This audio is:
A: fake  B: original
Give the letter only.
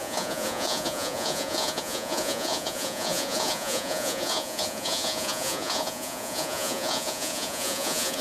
A